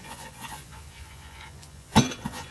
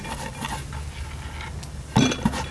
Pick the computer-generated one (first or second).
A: first